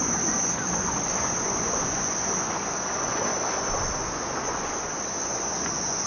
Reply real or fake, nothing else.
fake